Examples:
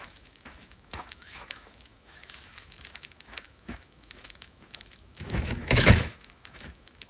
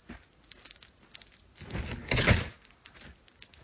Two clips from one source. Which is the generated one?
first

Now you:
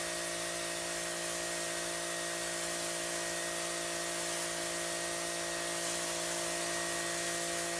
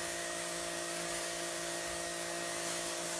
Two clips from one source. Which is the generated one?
second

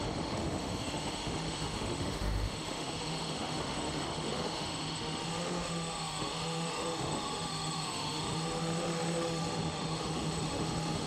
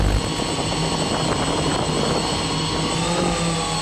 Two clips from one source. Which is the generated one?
first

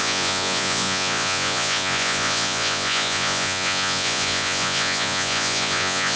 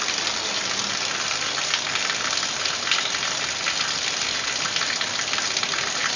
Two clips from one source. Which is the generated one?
first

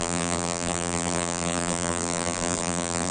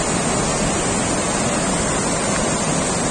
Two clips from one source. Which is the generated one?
first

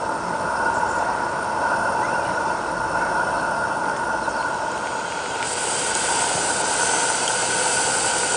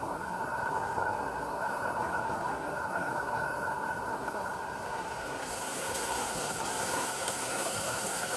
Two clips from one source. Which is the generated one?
second